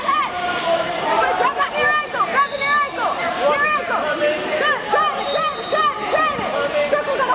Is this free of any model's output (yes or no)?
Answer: no